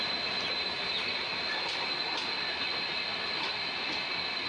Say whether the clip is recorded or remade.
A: recorded